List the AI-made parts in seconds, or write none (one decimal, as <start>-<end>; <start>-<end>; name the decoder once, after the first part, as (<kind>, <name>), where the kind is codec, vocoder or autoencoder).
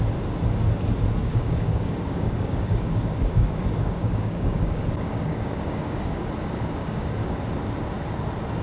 1.2-6.3 (codec, DAC); 6.8-7.4